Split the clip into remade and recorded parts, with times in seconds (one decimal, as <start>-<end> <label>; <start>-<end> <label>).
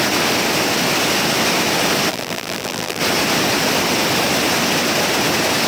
0.0-2.1 recorded; 2.1-3.0 remade; 3.0-5.7 recorded